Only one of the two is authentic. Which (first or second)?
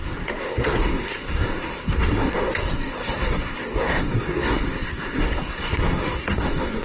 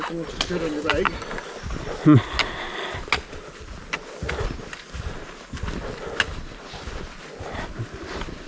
second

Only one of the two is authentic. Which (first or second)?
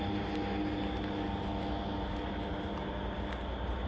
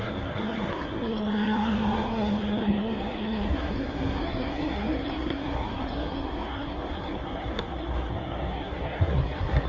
first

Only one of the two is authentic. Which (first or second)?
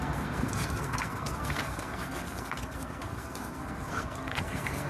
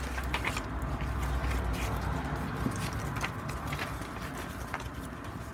second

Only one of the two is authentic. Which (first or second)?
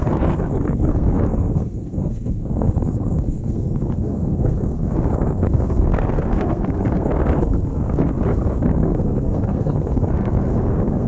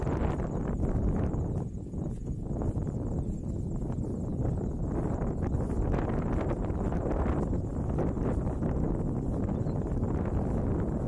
second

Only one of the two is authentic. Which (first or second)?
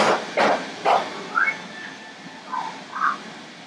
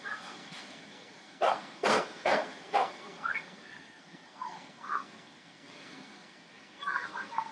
first